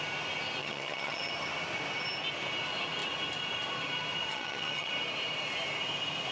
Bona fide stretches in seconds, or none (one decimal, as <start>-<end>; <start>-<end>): 0.0-0.6; 1.3-4.3; 4.9-6.3